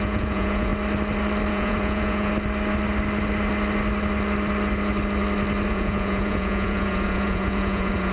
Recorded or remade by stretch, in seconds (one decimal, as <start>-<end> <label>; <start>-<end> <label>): 0.0-0.7 remade; 0.7-1.5 recorded; 1.5-2.3 remade; 2.3-5.7 recorded; 5.7-8.1 remade